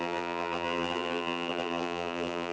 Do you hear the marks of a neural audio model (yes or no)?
yes